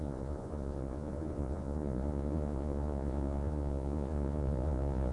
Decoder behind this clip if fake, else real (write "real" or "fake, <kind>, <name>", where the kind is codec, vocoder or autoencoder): fake, vocoder, Vocos